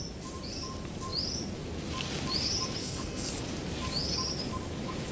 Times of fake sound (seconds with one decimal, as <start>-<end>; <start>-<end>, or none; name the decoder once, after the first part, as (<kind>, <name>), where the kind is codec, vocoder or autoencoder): 2.8-3.3 (codec, SNAC)